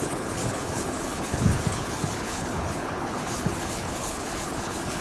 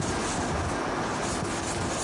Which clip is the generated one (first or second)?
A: first